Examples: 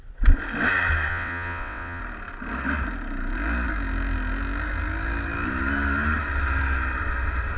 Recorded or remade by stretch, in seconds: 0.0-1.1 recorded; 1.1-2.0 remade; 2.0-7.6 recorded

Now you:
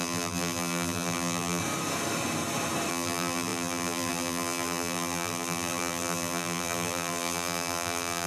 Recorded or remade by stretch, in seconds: 0.0-1.6 remade; 1.6-2.9 recorded; 2.9-8.3 remade

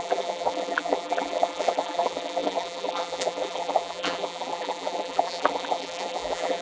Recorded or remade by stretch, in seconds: 0.0-6.6 remade

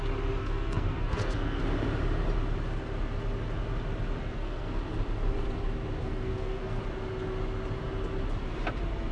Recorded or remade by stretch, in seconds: 0.0-0.4 recorded; 0.4-1.6 remade; 1.6-4.2 recorded; 4.2-4.8 remade; 4.8-6.0 recorded; 6.0-6.8 remade; 6.8-9.1 recorded

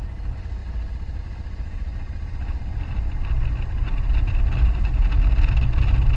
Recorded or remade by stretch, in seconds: 0.0-6.2 recorded

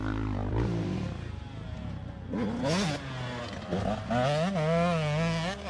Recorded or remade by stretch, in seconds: 0.0-5.7 recorded

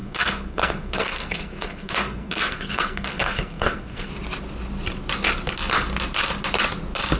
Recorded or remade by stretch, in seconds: 0.0-4.1 remade; 4.1-7.2 recorded